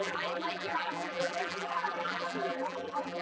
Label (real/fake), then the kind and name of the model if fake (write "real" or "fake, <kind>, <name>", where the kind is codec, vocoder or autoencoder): fake, vocoder, BigVGAN v2